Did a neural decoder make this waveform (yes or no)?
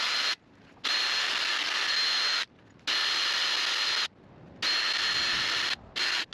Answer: no